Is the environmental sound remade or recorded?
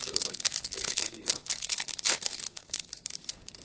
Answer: remade